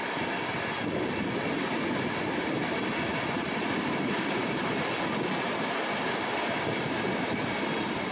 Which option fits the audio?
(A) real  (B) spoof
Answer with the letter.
A